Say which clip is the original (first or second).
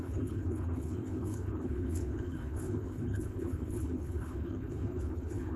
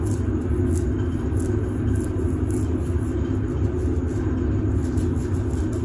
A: second